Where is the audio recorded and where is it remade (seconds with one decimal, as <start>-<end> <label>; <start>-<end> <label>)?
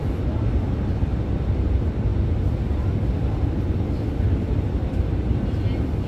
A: 0.0-6.1 recorded